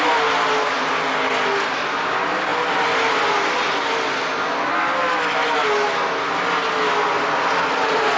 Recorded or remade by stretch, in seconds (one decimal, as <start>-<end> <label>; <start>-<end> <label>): 0.0-8.2 recorded

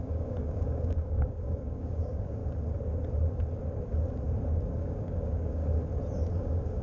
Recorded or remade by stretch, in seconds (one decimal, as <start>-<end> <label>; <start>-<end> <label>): 0.0-2.4 remade; 2.4-4.8 recorded; 4.8-5.6 remade; 5.6-6.3 recorded; 6.3-6.8 remade

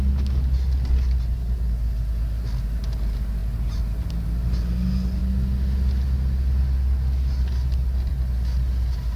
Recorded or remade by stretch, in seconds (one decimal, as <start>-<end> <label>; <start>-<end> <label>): 0.0-9.2 recorded

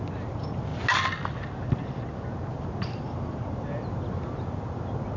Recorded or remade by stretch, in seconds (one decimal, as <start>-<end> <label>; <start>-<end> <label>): 0.0-5.2 recorded

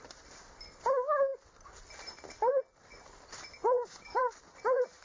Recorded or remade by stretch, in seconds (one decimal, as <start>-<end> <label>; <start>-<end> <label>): 0.0-3.6 recorded; 3.6-4.2 remade; 4.2-5.0 recorded